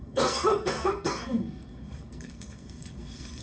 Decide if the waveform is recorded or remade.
remade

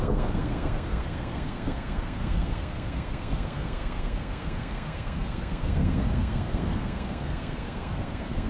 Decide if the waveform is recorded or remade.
remade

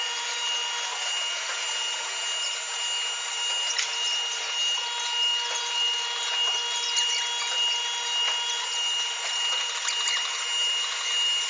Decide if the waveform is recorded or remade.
recorded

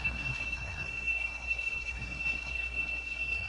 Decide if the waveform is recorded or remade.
remade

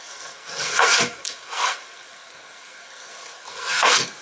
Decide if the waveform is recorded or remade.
remade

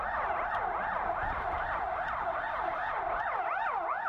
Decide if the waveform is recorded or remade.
recorded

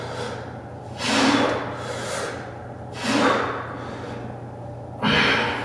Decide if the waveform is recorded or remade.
recorded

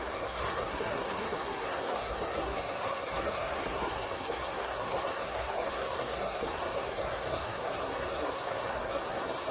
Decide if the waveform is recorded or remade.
remade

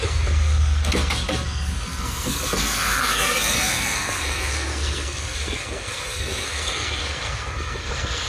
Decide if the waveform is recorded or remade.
remade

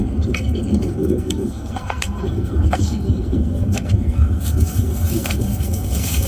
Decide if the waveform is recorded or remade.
remade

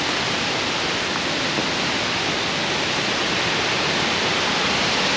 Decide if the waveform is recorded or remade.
recorded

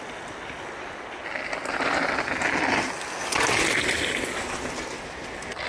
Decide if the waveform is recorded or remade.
recorded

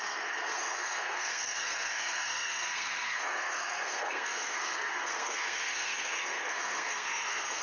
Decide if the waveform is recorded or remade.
remade